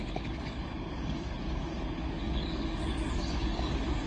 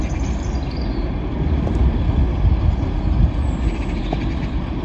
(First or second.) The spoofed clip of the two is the first